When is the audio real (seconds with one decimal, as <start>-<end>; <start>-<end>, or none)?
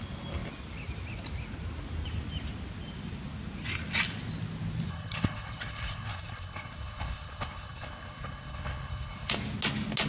0.0-4.9; 9.3-10.1